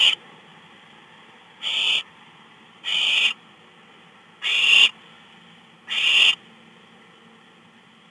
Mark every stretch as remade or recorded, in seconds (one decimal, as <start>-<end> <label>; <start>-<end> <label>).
0.0-0.5 remade; 0.5-2.1 recorded; 2.1-2.9 remade; 2.9-8.1 recorded